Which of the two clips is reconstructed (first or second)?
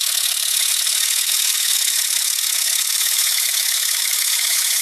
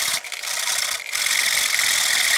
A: first